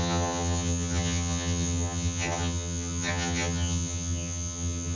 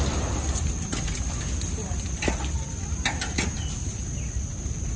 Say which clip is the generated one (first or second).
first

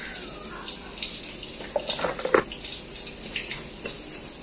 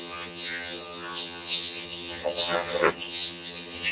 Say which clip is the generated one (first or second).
second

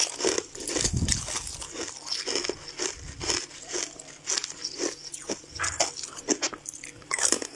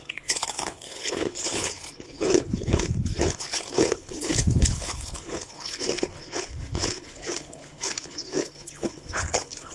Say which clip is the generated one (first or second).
second